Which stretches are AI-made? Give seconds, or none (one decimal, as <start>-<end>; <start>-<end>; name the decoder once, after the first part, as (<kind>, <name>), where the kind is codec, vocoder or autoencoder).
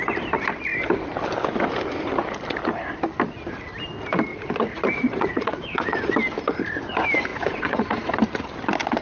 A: 4.3-6.1 (vocoder, Vocos); 7.3-8.1